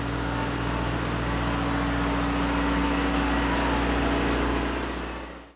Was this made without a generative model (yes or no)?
yes